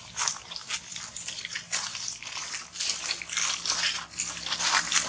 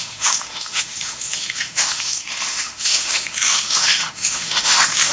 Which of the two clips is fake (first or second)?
second